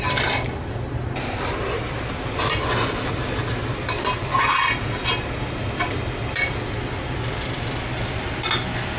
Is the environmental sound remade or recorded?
recorded